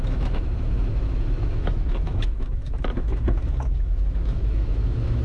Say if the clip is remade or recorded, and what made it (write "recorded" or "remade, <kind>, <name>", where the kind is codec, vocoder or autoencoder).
remade, autoencoder, DAC-VAE